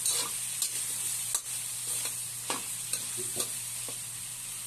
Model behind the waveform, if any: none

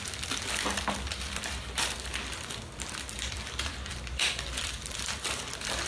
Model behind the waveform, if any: vocoder, BigVGAN v2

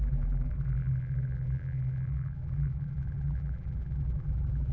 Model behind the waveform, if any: vocoder, BigVGAN v2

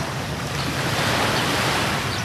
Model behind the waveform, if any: none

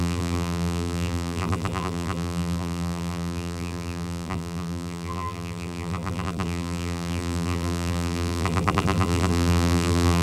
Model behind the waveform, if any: vocoder, BigVGAN v2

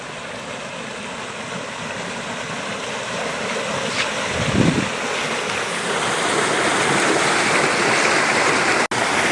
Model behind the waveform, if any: none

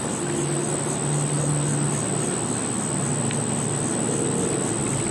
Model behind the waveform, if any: none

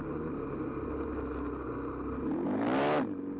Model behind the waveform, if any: none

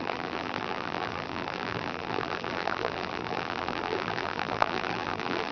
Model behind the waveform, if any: vocoder, BigVGAN v2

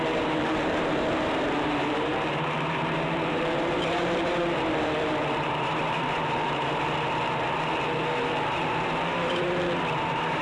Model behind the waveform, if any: vocoder, BigVGAN v2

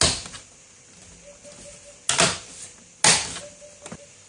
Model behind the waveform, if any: none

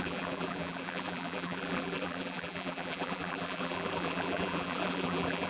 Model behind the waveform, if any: vocoder, BigVGAN v2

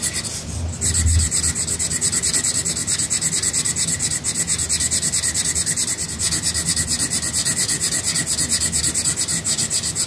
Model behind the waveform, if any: none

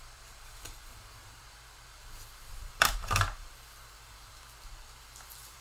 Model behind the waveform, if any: vocoder, BigVGAN v2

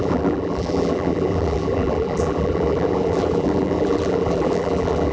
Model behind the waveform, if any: vocoder, BigVGAN v2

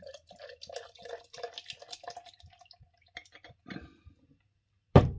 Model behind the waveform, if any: none